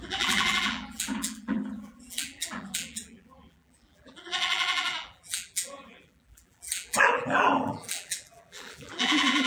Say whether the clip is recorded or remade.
remade